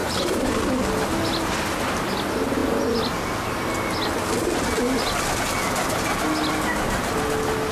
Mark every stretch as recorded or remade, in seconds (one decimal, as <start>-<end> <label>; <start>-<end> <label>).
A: 0.0-0.6 remade; 0.6-7.7 recorded